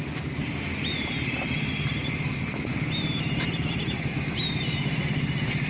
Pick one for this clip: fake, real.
fake